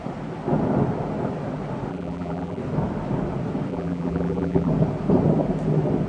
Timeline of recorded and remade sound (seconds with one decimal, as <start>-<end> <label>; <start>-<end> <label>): 0.0-1.9 recorded; 1.9-2.6 remade; 2.6-3.7 recorded; 3.7-4.7 remade; 4.7-6.1 recorded